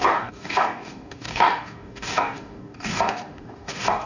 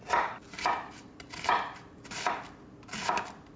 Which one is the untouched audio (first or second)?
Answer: second